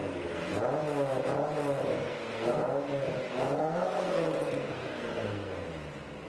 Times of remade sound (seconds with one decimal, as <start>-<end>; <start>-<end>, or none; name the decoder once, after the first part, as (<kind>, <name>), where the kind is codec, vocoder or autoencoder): 0.0-0.6 (codec, SNAC); 1.9-5.7